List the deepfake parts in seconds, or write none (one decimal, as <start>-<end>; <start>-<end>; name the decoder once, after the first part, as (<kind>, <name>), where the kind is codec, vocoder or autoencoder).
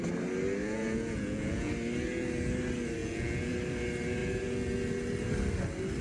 0.6-1.7 (vocoder, Vocos); 3.0-3.5